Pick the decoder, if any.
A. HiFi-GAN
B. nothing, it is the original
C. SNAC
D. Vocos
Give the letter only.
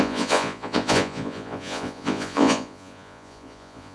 D